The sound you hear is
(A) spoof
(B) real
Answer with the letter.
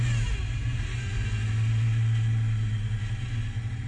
B